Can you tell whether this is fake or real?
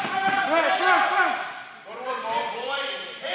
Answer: real